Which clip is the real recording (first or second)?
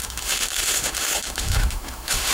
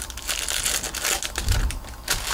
second